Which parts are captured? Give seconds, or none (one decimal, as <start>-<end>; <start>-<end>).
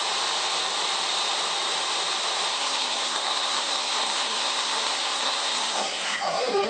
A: 0.0-2.5